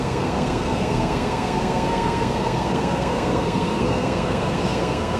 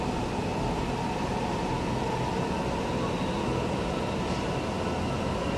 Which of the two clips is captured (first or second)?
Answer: second